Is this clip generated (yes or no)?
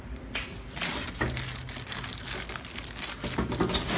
no